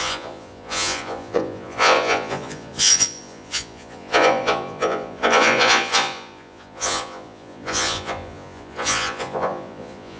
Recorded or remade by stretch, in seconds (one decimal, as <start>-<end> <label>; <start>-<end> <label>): 0.0-10.2 remade